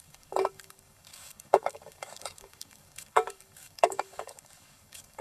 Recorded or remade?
remade